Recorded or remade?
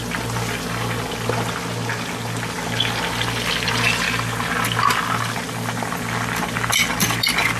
recorded